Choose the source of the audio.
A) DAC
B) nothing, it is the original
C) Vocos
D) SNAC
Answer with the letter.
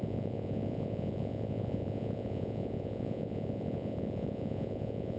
C